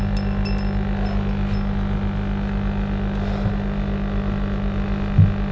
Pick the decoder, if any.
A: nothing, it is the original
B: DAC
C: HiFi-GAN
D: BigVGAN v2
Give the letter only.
A